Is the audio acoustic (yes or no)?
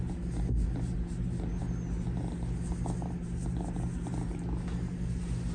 yes